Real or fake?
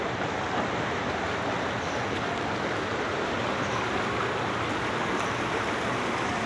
real